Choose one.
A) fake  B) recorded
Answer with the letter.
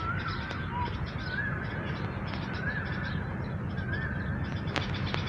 B